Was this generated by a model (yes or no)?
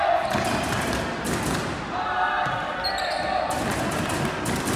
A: no